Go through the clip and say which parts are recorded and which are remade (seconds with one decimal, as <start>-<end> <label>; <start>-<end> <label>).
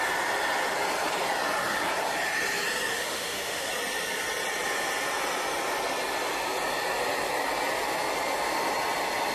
0.0-2.9 recorded; 2.9-3.7 remade; 3.7-9.3 recorded